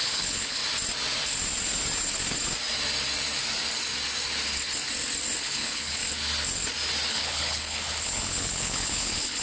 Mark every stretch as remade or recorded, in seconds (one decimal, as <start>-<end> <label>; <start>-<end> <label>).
0.0-0.6 remade; 0.6-5.4 recorded; 5.4-6.0 remade; 6.0-7.1 recorded; 7.1-9.4 remade